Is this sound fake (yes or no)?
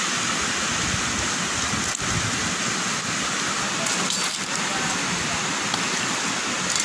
no